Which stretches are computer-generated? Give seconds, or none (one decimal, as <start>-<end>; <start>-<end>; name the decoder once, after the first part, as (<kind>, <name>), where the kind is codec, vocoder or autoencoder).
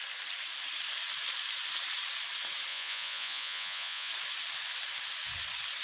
2.7-4.1 (vocoder, Vocos)